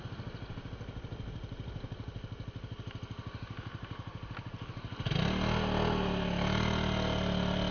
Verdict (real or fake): real